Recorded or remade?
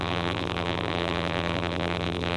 remade